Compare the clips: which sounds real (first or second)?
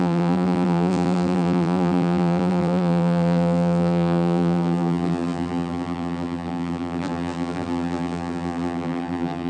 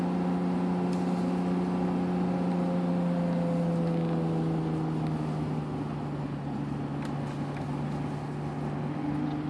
second